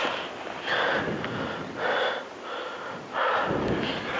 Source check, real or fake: real